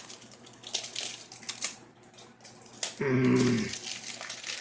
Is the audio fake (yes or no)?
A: no